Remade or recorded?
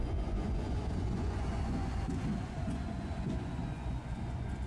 remade